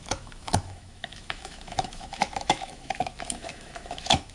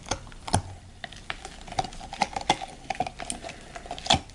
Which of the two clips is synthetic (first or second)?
first